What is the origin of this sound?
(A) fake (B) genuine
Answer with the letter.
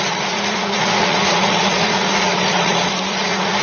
A